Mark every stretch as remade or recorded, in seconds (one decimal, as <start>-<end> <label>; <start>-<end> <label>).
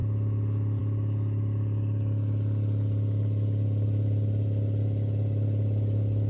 0.0-6.3 recorded